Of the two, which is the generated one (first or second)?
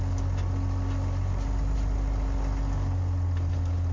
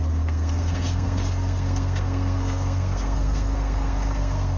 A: second